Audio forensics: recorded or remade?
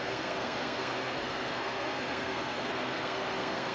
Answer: remade